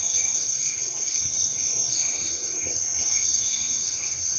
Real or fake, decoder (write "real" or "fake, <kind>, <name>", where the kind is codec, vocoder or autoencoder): fake, codec, SNAC